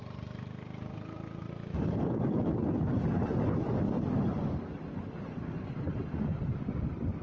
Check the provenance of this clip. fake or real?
real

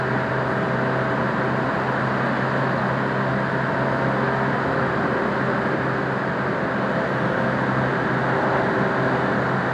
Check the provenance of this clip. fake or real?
real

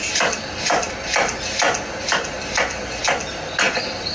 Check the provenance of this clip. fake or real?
real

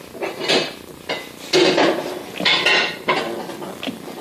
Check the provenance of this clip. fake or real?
real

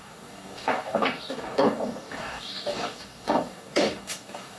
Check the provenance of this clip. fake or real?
fake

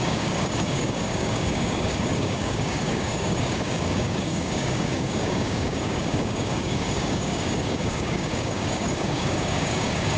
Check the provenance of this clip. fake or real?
fake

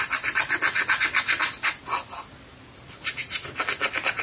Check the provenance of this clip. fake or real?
real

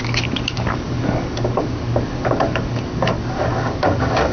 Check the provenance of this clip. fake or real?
fake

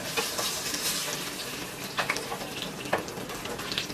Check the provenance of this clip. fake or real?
real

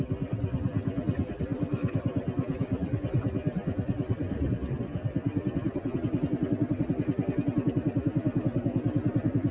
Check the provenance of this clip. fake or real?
real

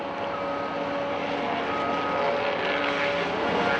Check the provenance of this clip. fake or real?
real